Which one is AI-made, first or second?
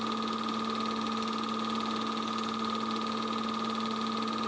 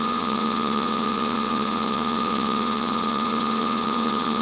second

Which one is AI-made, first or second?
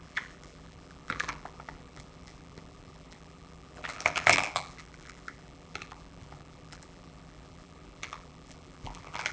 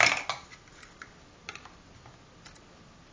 first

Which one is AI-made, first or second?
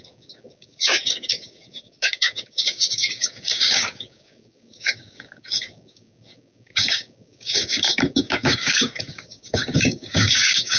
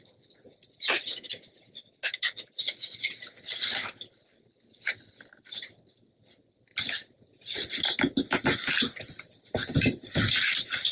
first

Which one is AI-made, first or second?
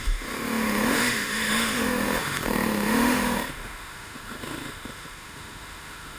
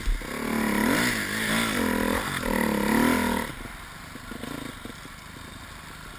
first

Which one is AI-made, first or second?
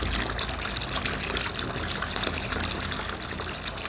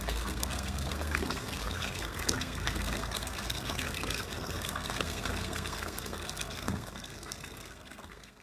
second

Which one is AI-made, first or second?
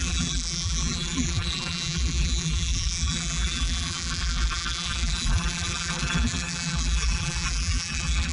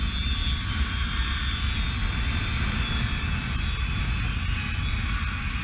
first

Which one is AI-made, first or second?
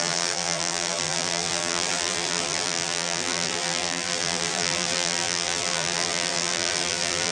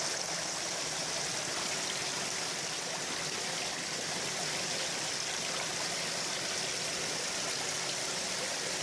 first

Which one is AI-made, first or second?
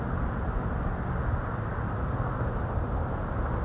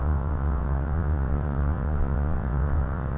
second